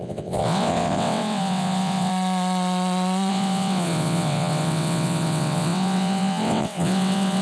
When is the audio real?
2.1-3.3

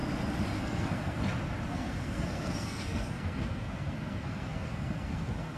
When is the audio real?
0.0-0.6; 1.2-1.7